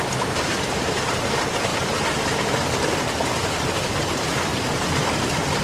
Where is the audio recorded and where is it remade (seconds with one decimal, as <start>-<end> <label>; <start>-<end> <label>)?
0.0-1.7 remade; 1.7-3.0 recorded; 3.0-4.5 remade; 4.5-5.6 recorded